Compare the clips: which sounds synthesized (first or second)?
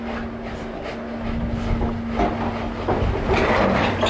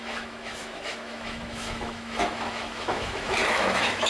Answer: second